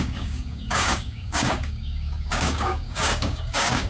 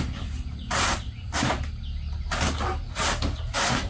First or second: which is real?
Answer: second